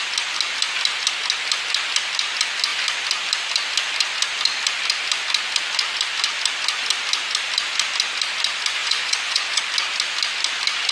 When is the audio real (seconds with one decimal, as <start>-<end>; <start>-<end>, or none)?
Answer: 0.0-8.8; 9.6-10.9